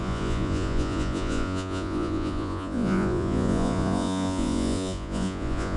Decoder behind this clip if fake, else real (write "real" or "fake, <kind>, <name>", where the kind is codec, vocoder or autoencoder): fake, vocoder, Vocos